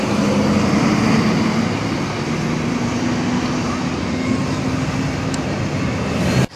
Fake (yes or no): no